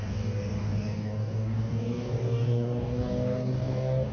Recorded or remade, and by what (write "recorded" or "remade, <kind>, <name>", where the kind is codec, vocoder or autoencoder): remade, codec, DAC